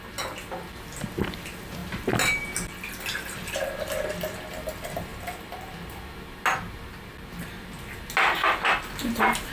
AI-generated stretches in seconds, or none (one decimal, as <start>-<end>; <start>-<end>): none